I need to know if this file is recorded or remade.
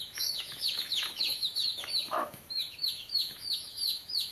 remade